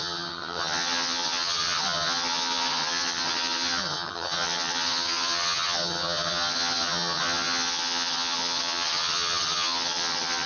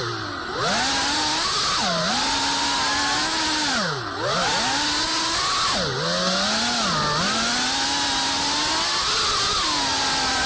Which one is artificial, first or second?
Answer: first